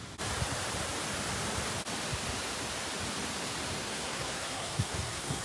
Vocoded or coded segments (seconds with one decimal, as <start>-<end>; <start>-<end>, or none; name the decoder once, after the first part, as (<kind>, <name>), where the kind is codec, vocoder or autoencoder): 3.8-5.4 (codec, SNAC)